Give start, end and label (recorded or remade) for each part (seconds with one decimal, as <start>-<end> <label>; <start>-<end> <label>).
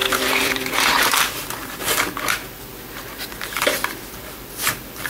0.0-1.8 remade; 1.8-5.1 recorded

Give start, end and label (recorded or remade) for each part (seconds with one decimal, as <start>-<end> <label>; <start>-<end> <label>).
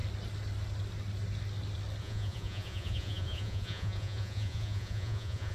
0.0-2.0 recorded; 2.0-5.5 remade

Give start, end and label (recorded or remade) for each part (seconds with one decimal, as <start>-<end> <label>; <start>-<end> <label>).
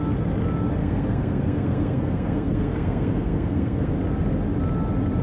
0.0-0.8 recorded; 0.8-3.9 remade; 3.9-5.2 recorded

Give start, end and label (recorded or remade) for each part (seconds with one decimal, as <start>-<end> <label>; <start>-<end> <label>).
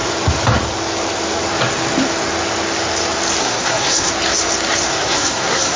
0.0-3.4 recorded; 3.4-4.1 remade; 4.1-4.9 recorded; 4.9-5.8 remade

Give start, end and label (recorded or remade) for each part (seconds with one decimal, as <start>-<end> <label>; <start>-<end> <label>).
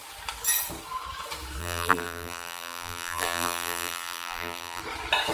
0.0-1.6 recorded; 1.6-4.8 remade; 4.8-5.3 recorded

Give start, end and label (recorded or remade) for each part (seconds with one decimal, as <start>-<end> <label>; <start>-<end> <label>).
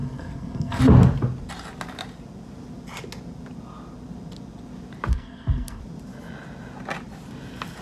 0.0-0.8 remade; 0.8-5.1 recorded; 5.1-5.8 remade; 5.8-7.8 recorded